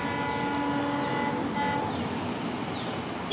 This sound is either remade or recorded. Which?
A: recorded